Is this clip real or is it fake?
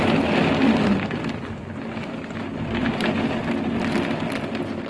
real